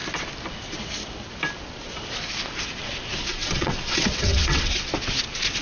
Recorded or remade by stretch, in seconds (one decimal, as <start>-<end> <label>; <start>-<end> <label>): 0.0-3.3 recorded; 3.3-4.9 remade; 4.9-5.6 recorded